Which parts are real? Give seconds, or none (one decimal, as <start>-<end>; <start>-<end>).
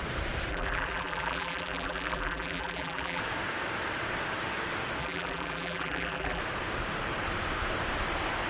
0.0-0.5; 3.2-5.0; 6.4-8.5